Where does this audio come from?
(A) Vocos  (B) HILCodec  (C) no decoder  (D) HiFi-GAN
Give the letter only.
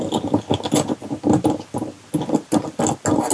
C